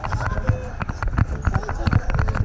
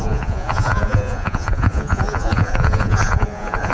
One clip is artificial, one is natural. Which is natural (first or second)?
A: first